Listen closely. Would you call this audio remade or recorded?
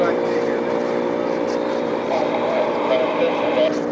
remade